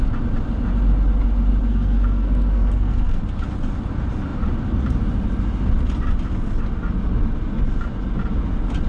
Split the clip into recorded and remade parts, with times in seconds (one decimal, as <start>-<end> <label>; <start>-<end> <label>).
0.0-1.7 recorded; 1.7-3.2 remade; 3.2-8.9 recorded